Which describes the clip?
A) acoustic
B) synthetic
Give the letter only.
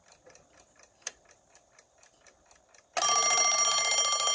A